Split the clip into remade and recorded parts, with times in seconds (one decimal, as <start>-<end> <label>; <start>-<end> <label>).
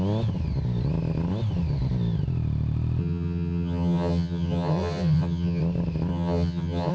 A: 0.0-3.0 recorded; 3.0-5.6 remade; 5.6-6.1 recorded; 6.1-6.9 remade